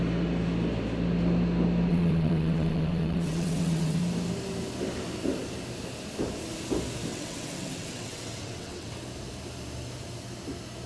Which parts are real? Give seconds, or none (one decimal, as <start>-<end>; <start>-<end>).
0.0-1.9; 4.0-7.1; 8.9-10.9